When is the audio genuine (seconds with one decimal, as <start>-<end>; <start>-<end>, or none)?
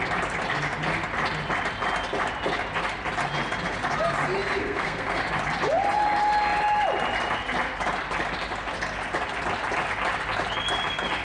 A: 0.0-4.6; 5.2-11.2